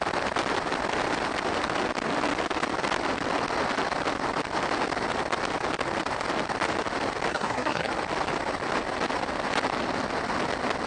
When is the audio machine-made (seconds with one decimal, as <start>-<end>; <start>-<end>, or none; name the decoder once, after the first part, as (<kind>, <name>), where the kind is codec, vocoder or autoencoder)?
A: 7.3-7.9 (codec, SNAC)